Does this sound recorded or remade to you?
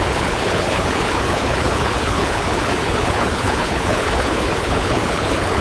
remade